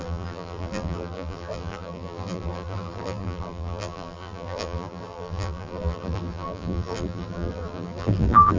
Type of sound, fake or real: fake